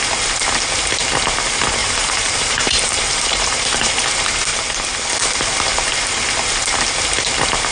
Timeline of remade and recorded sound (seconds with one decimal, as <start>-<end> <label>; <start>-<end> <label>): 0.0-1.8 recorded; 1.8-3.9 remade; 3.9-7.7 recorded